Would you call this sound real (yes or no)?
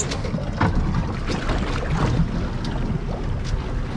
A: yes